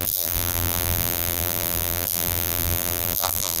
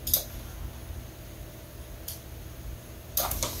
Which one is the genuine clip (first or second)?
second